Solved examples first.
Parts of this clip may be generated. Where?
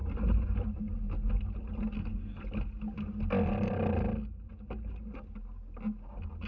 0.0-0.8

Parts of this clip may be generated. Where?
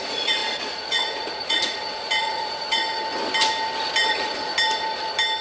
0.0-2.8; 4.1-4.5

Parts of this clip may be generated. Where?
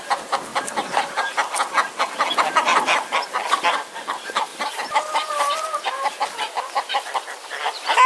0.5-1.7; 4.5-6.1